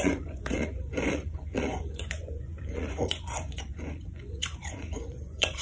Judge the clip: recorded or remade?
remade